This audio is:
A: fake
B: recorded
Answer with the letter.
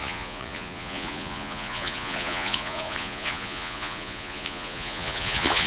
A